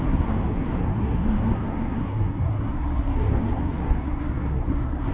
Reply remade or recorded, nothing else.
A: remade